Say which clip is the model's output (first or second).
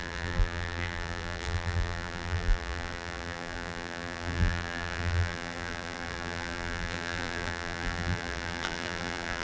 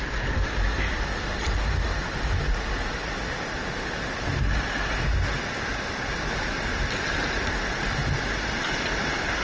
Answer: first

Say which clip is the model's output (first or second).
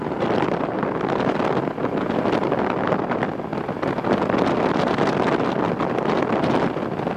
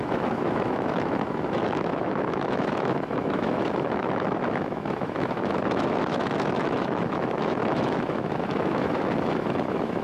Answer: second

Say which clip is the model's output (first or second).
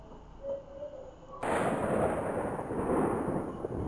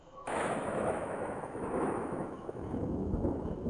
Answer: second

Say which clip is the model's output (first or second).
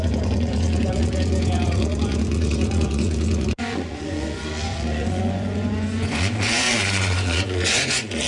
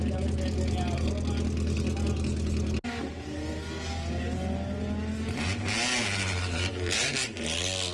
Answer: first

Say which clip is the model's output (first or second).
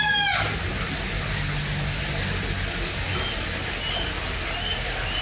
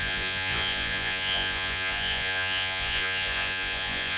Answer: second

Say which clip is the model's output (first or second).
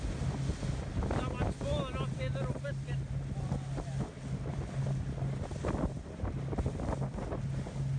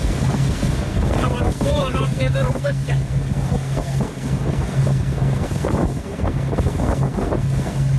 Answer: second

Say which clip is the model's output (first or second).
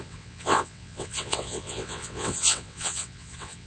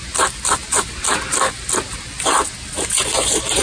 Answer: first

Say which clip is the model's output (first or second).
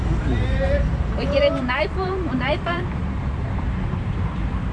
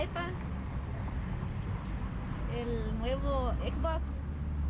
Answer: first